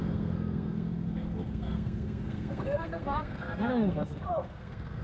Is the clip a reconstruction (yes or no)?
yes